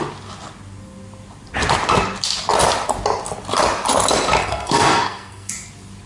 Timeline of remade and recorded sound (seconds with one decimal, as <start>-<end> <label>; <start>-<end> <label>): 0.0-4.4 recorded; 4.4-5.5 remade; 5.5-6.1 recorded